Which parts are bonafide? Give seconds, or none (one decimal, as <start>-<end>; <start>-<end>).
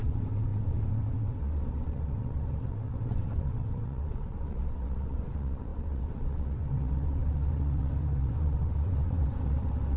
none